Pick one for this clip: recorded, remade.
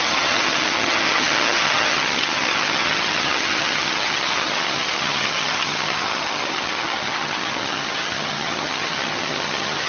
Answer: remade